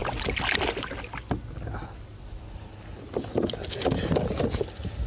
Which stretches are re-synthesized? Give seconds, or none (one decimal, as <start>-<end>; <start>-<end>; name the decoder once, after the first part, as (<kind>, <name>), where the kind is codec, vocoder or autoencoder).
none